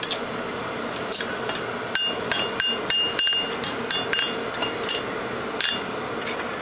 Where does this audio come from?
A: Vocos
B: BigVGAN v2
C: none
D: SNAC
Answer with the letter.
C